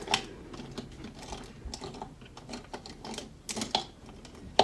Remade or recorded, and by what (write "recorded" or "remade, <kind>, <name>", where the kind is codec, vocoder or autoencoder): recorded